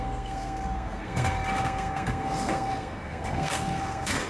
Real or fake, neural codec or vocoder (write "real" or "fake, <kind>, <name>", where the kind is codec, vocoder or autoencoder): fake, codec, SNAC